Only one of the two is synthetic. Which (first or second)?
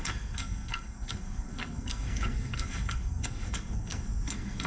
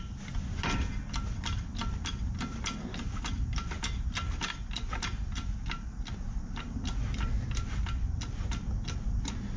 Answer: first